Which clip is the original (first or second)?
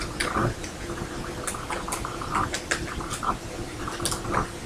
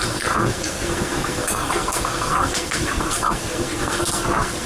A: first